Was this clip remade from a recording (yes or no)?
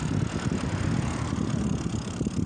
no